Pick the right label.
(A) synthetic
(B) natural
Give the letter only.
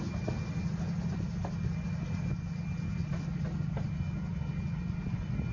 B